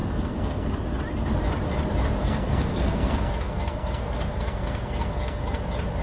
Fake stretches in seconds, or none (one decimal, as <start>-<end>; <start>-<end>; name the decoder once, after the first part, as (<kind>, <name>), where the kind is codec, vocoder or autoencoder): 0.0-0.7 (codec, SNAC); 2.2-5.6